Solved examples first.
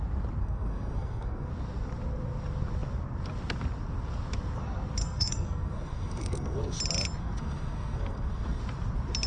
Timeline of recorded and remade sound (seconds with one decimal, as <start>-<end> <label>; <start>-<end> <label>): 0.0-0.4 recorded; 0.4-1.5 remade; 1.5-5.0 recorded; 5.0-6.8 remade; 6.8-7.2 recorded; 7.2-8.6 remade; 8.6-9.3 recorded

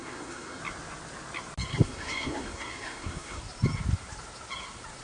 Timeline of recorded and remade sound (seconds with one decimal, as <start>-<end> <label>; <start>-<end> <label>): 0.0-0.6 remade; 0.6-1.7 recorded; 1.7-3.4 remade; 3.4-5.0 recorded

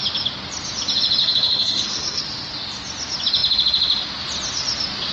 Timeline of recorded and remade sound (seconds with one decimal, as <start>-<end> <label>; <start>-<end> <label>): 0.0-1.2 recorded; 1.2-2.2 remade; 2.2-5.1 recorded

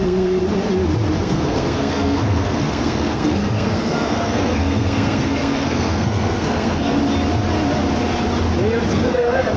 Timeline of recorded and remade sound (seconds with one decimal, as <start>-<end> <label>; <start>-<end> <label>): 0.0-0.4 remade; 0.4-1.2 recorded; 1.2-7.0 remade; 7.0-8.9 recorded; 8.9-9.6 remade

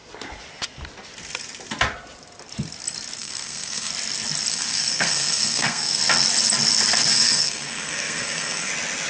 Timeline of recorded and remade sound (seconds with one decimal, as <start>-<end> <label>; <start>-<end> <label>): 0.0-3.2 recorded; 3.2-3.9 remade; 3.9-4.5 recorded; 4.5-6.0 remade; 6.0-7.1 recorded; 7.1-8.7 remade; 8.7-9.1 recorded

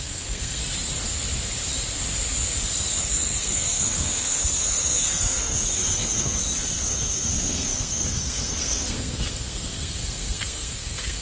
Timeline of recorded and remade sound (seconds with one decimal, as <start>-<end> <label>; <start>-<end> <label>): 0.0-0.6 remade; 0.6-3.0 recorded; 3.0-6.4 remade; 6.4-6.9 recorded; 6.9-11.2 remade